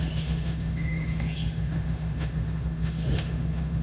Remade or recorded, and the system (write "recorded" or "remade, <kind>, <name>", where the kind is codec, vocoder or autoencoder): remade, autoencoder, DAC-VAE